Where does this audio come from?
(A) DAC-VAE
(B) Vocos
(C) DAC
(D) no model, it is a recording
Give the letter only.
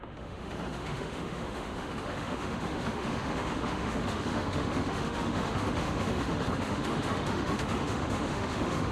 A